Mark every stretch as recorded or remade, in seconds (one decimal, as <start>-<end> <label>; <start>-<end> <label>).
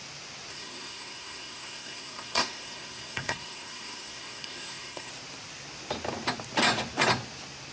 0.0-0.5 recorded; 0.5-5.1 remade; 5.1-7.7 recorded